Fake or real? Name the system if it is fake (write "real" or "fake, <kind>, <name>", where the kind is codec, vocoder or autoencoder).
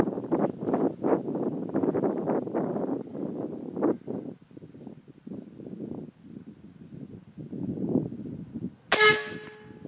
real